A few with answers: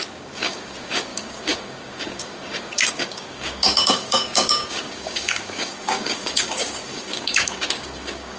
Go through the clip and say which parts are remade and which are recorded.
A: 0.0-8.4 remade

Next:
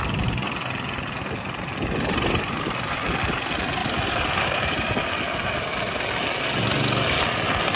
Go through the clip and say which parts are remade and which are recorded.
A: 0.0-3.8 recorded; 3.8-4.9 remade; 4.9-7.8 recorded

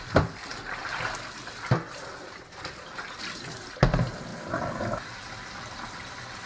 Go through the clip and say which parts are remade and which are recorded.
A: 0.0-0.5 remade; 0.5-1.1 recorded; 1.1-4.3 remade; 4.3-5.5 recorded; 5.5-6.5 remade